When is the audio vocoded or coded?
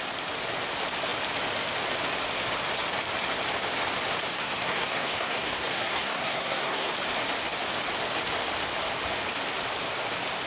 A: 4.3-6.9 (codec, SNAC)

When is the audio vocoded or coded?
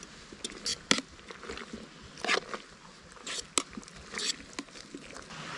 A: none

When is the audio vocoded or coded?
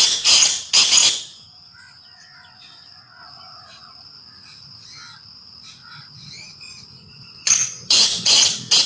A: 1.0-3.2 (vocoder, Vocos); 5.8-8.5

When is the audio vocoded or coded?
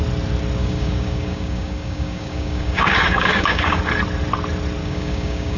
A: 0.6-3.8 (codec, DAC); 4.8-5.6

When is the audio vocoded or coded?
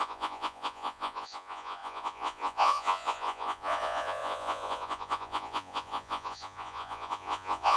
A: 0.0-7.8 (vocoder, Vocos)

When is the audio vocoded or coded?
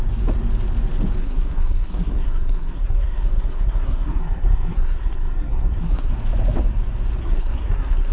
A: 1.2-6.1 (codec, SNAC); 7.2-8.1